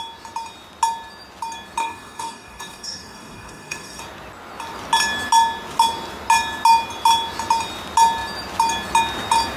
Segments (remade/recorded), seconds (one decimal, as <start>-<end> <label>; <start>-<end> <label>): 0.0-1.8 recorded; 1.8-4.0 remade; 4.0-9.6 recorded